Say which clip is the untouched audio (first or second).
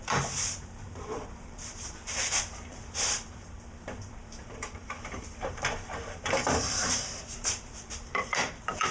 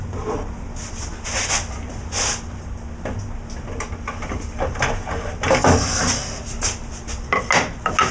second